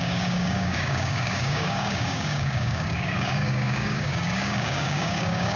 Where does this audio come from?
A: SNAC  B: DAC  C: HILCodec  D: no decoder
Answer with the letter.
B